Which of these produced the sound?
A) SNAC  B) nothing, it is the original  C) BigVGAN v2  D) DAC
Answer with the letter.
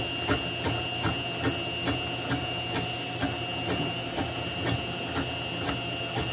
B